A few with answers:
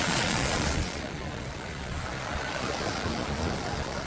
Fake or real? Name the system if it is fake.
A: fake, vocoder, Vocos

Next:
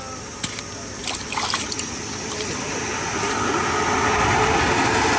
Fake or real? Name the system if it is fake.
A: real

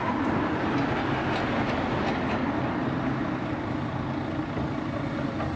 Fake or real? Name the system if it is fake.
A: real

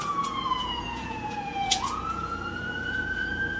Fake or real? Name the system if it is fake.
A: fake, vocoder, Vocos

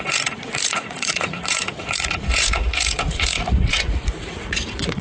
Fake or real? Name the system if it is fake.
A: fake, vocoder, Vocos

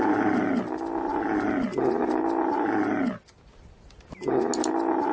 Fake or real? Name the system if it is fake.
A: real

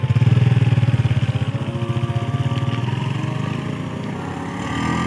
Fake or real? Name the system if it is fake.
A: real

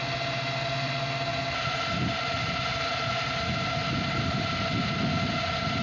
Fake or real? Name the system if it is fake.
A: real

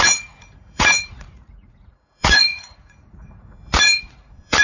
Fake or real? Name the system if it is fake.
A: fake, vocoder, Vocos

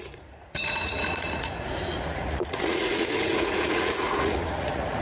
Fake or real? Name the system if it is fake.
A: fake, vocoder, Vocos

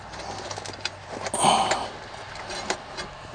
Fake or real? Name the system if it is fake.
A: real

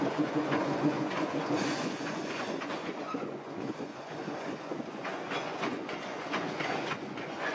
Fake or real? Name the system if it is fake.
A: fake, vocoder, Vocos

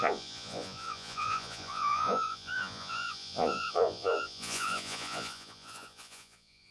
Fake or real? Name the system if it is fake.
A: fake, vocoder, Vocos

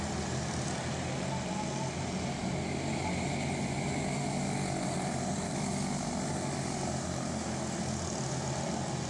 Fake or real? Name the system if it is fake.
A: real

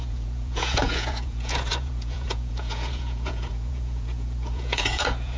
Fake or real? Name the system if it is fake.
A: fake, vocoder, Vocos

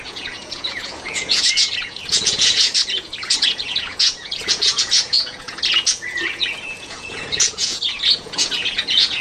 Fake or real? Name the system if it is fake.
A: fake, vocoder, Vocos